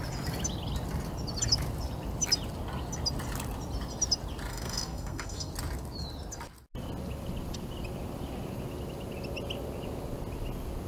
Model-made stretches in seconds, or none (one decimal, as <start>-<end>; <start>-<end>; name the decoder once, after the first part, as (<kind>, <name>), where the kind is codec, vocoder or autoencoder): 4.5-5.5 (codec, SNAC)